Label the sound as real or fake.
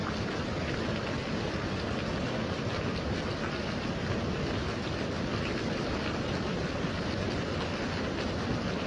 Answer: real